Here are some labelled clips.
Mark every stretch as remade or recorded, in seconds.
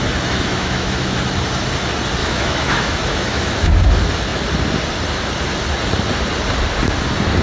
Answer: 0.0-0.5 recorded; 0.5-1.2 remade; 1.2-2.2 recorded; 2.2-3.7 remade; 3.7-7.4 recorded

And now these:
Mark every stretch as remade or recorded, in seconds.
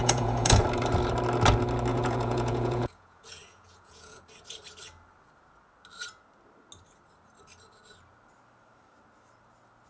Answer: 0.0-0.6 remade; 0.6-1.9 recorded; 1.9-4.2 remade; 4.2-9.9 recorded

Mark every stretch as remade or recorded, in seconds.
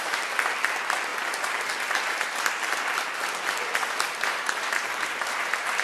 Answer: 0.0-5.8 recorded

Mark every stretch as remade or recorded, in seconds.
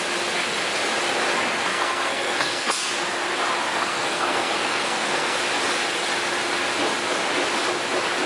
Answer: 0.0-1.7 recorded; 1.7-2.9 remade; 2.9-3.7 recorded; 3.7-5.4 remade; 5.4-8.3 recorded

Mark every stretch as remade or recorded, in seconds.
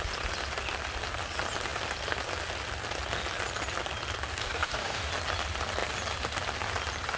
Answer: 0.0-4.3 recorded; 4.3-5.1 remade; 5.1-7.2 recorded